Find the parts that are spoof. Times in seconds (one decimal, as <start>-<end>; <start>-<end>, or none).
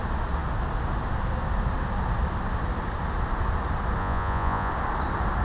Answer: 4.0-4.7